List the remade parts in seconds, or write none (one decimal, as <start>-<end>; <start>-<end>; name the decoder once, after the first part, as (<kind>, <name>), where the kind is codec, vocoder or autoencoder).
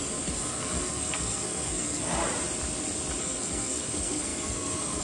0.0-2.2 (codec, SNAC); 3.2-5.0